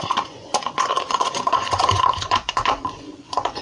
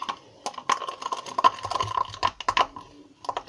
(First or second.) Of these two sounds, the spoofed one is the first